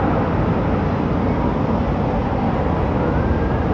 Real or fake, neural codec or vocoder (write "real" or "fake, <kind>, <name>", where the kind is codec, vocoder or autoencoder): real